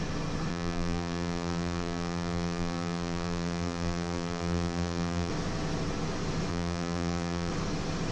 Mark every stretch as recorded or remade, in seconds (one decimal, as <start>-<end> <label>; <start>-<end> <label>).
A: 0.0-0.5 recorded; 0.5-5.3 remade; 5.3-6.5 recorded; 6.5-7.5 remade; 7.5-8.1 recorded